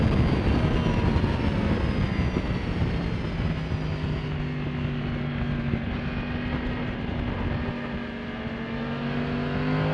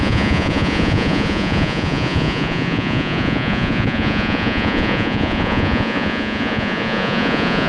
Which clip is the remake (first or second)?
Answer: second